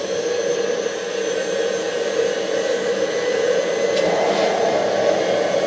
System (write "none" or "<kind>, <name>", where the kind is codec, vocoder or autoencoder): none